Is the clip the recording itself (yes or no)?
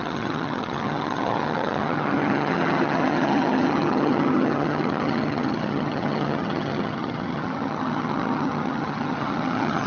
no